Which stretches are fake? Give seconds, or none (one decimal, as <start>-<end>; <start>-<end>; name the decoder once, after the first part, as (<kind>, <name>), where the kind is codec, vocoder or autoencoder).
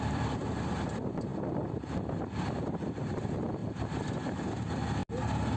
3.6-4.5 (vocoder, BigVGAN v2)